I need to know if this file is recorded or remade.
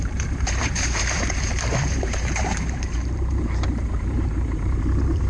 remade